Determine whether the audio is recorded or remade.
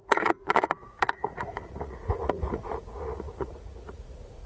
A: remade